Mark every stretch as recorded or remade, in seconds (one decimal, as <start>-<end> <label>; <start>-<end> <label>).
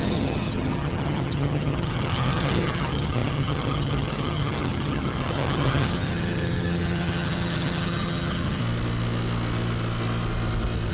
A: 0.0-8.6 remade; 8.6-10.9 recorded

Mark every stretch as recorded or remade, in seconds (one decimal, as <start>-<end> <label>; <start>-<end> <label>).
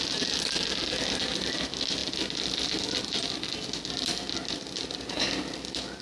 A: 0.0-6.0 recorded